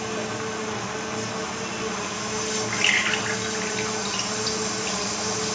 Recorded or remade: recorded